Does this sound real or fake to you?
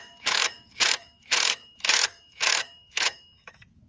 fake